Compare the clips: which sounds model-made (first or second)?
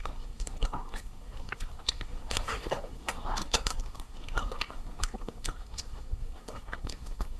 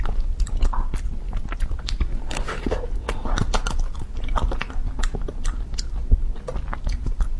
first